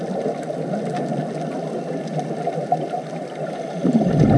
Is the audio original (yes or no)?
yes